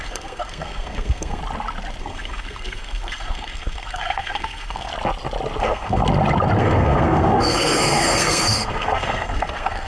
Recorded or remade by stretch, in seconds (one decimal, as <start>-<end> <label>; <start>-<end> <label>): 0.0-1.4 remade; 1.4-2.0 recorded; 2.0-4.9 remade; 4.9-5.6 recorded; 5.6-6.0 remade; 6.0-6.6 recorded; 6.6-9.9 remade